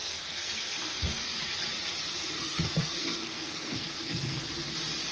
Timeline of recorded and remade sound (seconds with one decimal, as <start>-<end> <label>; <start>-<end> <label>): 0.0-1.4 remade; 1.4-2.1 recorded; 2.1-4.4 remade; 4.4-5.1 recorded